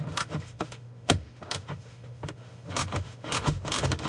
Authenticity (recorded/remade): remade